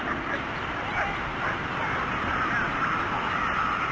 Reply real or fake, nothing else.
real